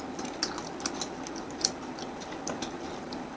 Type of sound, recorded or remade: recorded